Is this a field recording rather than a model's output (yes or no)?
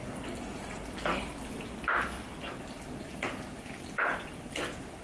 yes